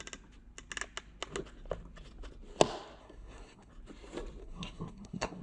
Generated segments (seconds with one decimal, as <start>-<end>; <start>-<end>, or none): 3.0-3.7; 4.4-5.4